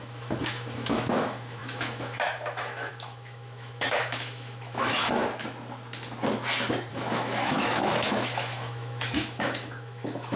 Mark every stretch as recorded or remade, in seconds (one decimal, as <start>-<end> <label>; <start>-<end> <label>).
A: 0.0-5.2 remade; 5.2-6.9 recorded; 6.9-10.4 remade